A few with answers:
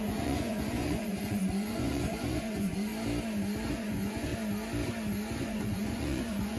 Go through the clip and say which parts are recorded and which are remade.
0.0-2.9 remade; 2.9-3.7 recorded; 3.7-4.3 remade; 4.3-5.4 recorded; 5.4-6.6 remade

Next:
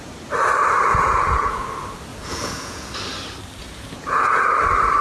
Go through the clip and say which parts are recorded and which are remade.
0.0-0.9 recorded; 0.9-1.6 remade; 1.6-2.1 recorded; 2.1-2.9 remade; 2.9-3.6 recorded; 3.6-4.4 remade; 4.4-5.0 recorded

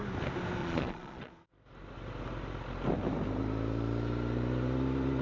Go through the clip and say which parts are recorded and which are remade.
0.0-0.6 recorded; 0.6-1.3 remade; 1.3-5.2 recorded

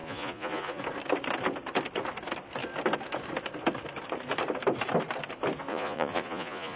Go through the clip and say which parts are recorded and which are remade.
0.0-0.8 remade; 0.8-5.7 recorded; 5.7-6.8 remade

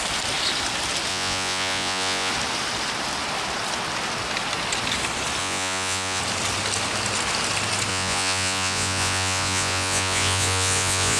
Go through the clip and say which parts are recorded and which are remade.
0.0-1.1 recorded; 1.1-2.3 remade; 2.3-5.4 recorded; 5.4-6.2 remade; 6.2-7.9 recorded; 7.9-11.2 remade

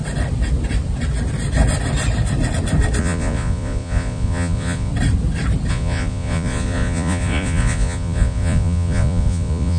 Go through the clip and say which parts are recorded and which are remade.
0.0-3.0 recorded; 3.0-4.9 remade; 4.9-5.7 recorded; 5.7-9.8 remade

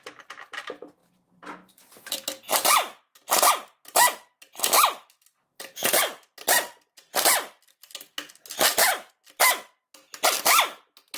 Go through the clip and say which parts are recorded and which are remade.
0.0-11.2 recorded

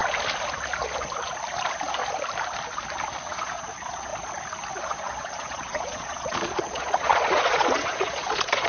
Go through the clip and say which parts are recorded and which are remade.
0.0-3.2 recorded; 3.2-4.1 remade; 4.1-4.8 recorded; 4.8-8.7 remade